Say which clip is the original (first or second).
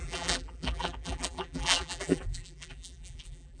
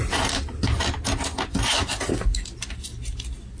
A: second